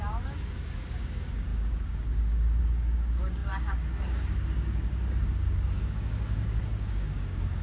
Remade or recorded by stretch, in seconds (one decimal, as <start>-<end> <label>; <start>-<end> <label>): 0.0-7.6 remade